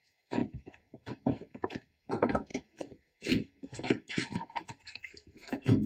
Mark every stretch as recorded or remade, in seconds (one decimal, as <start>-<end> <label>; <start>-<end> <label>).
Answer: 0.0-5.9 remade